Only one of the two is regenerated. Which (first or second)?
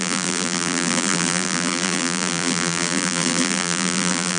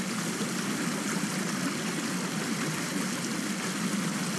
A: first